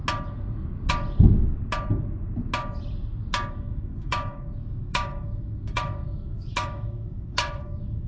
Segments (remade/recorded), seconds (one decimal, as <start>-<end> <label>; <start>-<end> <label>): 0.0-3.5 recorded; 3.5-8.1 remade

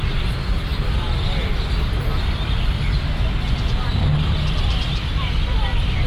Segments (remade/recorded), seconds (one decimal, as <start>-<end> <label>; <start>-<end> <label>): 0.0-6.1 recorded

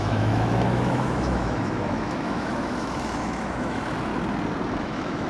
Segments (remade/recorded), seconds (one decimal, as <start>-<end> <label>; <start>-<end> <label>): 0.0-4.1 remade; 4.1-4.8 recorded; 4.8-5.3 remade

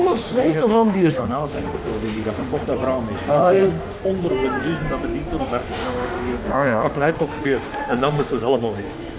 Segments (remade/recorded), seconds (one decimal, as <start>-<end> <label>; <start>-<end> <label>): 0.0-2.7 remade; 2.7-3.3 recorded; 3.3-4.0 remade; 4.0-5.4 recorded; 5.4-9.2 remade

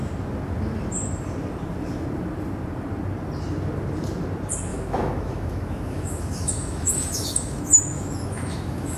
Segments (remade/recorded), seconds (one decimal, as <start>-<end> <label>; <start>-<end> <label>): 0.0-4.7 recorded; 4.7-9.0 remade

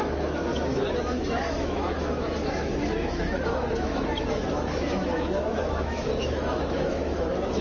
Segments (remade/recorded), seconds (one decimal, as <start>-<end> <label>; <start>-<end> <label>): 0.0-7.6 remade